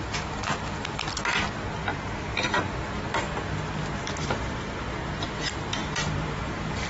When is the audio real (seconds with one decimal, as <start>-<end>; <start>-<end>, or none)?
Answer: 0.0-1.8; 2.5-4.0; 4.8-5.8